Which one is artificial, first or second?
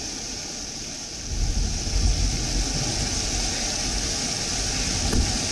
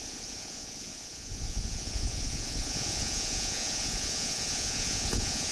second